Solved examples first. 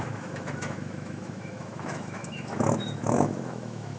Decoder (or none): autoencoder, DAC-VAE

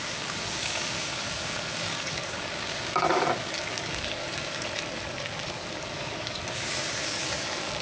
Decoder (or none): codec, DAC